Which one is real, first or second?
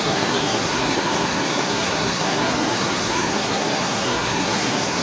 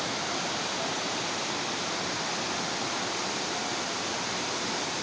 second